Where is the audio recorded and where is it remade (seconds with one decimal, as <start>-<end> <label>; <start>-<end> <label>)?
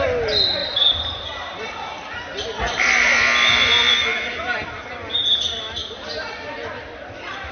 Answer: 0.0-5.8 remade; 5.8-6.5 recorded; 6.5-7.5 remade